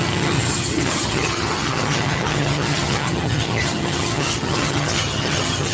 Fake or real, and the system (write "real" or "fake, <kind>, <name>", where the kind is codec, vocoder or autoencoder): fake, vocoder, HiFi-GAN